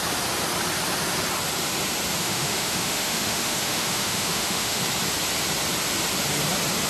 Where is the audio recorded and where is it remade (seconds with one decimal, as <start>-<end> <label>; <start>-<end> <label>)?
0.0-2.2 recorded; 2.2-4.8 remade; 4.8-6.9 recorded